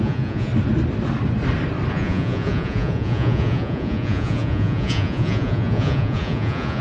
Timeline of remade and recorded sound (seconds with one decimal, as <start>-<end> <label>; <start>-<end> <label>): 0.0-0.5 remade; 0.5-1.9 recorded; 1.9-6.8 remade